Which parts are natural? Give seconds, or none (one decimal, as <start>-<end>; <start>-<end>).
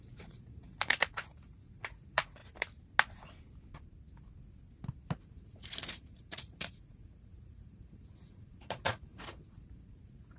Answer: 2.4-5.2